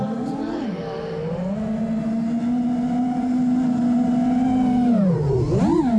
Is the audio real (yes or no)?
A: yes